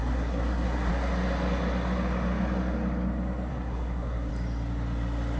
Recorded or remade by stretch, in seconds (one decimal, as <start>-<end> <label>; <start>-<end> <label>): 0.0-0.9 remade; 0.9-3.5 recorded; 3.5-4.3 remade; 4.3-5.4 recorded